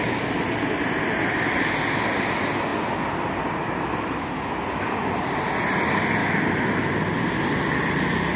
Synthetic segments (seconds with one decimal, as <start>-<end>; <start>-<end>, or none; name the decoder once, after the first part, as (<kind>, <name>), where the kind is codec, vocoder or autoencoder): 6.2-6.9 (autoencoder, DAC-VAE)